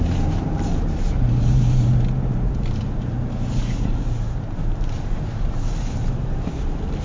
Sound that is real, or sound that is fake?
fake